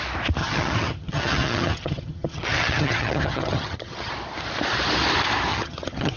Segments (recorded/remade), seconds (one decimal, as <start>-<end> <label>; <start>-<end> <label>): 0.0-0.4 recorded; 0.4-4.1 remade; 4.1-5.5 recorded; 5.5-6.2 remade